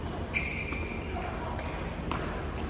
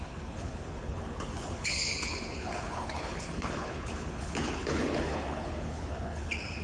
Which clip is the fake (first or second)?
second